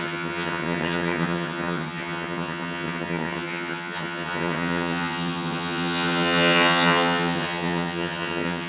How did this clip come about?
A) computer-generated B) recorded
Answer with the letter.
A